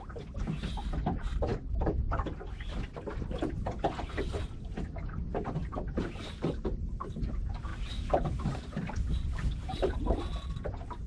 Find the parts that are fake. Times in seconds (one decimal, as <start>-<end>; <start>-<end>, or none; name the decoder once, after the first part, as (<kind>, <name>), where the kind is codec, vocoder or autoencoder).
5.6-7.0 (vocoder, BigVGAN v2); 7.7-10.2